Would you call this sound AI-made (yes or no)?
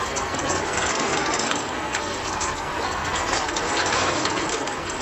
yes